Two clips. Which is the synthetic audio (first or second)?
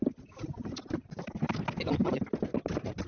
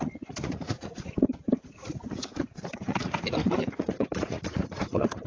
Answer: second